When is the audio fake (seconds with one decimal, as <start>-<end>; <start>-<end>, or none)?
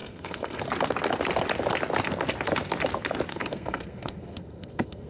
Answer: 0.0-0.6; 3.3-5.1